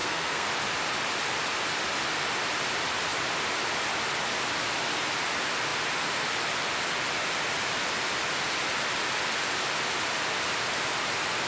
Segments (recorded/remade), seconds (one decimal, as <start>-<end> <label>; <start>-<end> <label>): 0.0-0.5 remade; 0.5-11.5 recorded